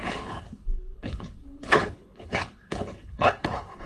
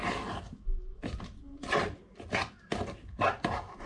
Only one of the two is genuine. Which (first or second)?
second